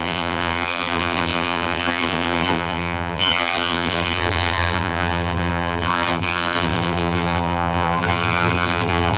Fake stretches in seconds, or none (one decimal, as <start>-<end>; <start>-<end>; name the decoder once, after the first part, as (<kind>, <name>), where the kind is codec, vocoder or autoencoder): 0.0-9.2 (vocoder, BigVGAN v2)